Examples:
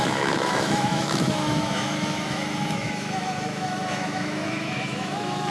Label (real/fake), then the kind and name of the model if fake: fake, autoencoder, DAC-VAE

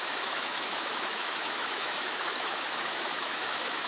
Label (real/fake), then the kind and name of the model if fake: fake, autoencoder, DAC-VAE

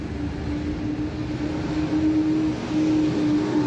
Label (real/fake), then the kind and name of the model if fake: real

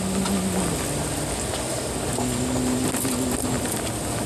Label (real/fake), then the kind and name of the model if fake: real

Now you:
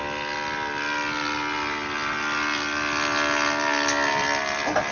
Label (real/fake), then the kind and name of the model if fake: real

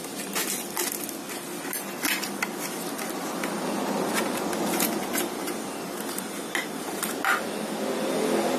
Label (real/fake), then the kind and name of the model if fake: real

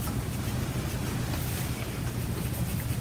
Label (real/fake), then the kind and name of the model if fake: real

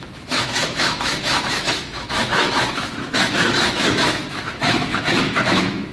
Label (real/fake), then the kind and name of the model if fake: fake, autoencoder, DAC-VAE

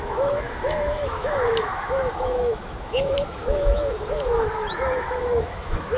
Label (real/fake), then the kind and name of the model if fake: fake, autoencoder, DAC-VAE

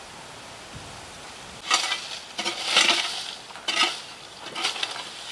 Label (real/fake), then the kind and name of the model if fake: real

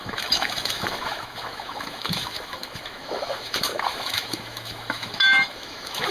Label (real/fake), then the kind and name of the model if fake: fake, autoencoder, DAC-VAE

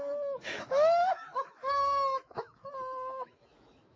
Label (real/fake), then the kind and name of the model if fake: fake, autoencoder, DAC-VAE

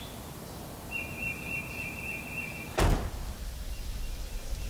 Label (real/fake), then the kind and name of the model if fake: real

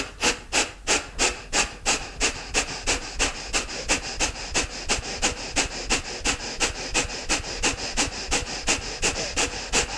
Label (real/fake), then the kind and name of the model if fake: real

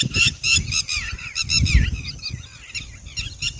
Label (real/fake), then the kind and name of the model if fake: real